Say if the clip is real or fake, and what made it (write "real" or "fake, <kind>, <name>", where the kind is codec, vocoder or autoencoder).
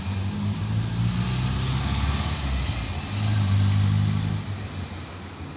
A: real